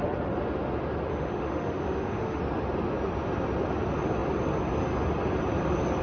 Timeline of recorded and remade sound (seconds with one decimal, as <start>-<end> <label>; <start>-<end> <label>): 0.0-1.1 recorded; 1.1-2.4 remade; 2.4-6.0 recorded